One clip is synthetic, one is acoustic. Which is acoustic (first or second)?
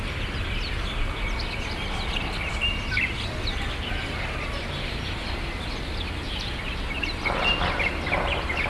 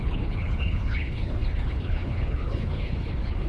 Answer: first